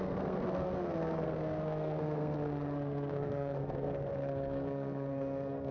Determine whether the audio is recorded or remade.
remade